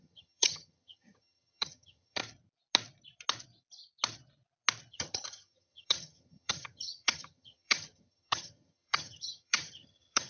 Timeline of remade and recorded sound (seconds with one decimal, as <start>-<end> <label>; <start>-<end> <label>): 0.0-2.2 remade; 2.2-4.9 recorded; 4.9-10.3 remade